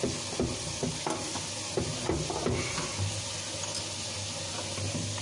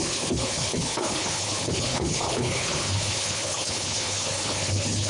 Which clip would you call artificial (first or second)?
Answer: second